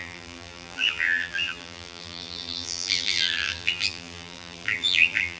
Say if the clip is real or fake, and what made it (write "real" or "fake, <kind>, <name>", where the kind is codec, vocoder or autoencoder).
fake, vocoder, BigVGAN v2